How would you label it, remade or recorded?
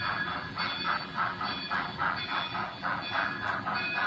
remade